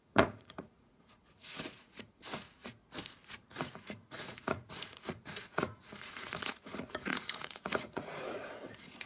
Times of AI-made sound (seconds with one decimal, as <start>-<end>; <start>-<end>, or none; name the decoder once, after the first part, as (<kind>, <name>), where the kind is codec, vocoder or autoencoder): 0.0-2.8 (vocoder, Vocos); 3.5-9.1